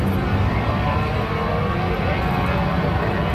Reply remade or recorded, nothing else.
recorded